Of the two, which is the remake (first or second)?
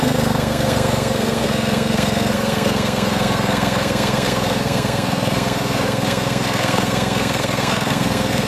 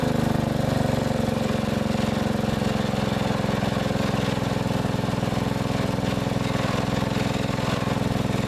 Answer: first